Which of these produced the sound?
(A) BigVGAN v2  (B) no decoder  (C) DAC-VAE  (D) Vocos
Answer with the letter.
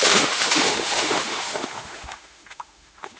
C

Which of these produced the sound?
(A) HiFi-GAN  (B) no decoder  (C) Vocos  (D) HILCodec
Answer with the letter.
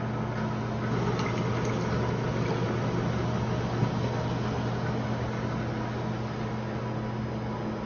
B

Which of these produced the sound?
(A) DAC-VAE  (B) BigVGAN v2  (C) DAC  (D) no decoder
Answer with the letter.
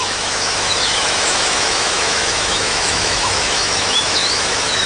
A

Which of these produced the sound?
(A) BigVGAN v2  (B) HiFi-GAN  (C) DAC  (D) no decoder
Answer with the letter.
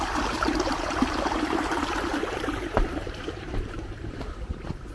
A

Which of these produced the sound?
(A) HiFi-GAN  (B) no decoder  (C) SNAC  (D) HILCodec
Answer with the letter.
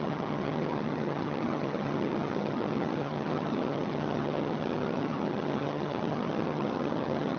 A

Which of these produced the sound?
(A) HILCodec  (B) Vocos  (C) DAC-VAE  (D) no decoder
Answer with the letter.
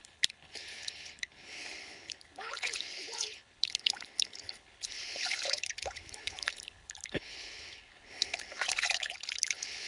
A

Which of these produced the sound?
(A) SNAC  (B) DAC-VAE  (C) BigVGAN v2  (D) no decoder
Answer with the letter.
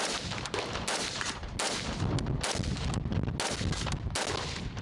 D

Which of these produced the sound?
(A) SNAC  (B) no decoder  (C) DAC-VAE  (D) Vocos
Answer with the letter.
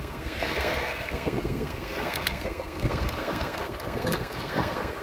A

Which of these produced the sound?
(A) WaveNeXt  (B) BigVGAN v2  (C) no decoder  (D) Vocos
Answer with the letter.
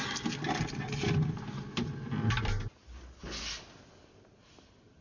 C